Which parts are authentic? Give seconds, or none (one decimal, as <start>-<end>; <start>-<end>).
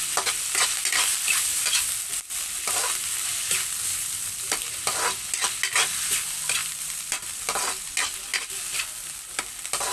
0.0-6.6; 7.8-9.9